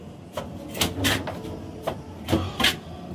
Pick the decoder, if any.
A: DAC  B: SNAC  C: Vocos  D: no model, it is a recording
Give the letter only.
D